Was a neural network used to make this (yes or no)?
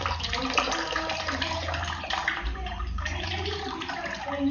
yes